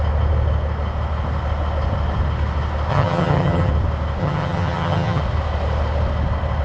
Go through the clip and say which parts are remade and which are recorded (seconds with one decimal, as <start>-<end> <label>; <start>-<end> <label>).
0.0-2.9 recorded; 2.9-3.7 remade; 3.7-4.2 recorded; 4.2-5.2 remade; 5.2-6.6 recorded